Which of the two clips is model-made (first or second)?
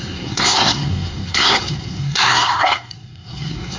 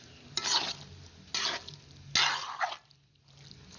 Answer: first